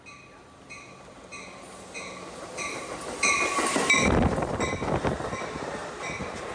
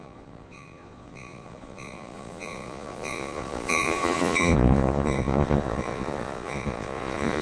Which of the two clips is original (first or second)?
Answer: first